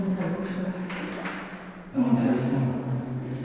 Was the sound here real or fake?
real